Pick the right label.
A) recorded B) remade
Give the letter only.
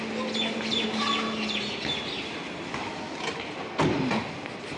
A